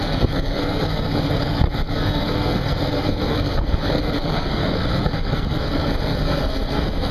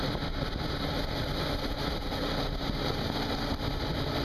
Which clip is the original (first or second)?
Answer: second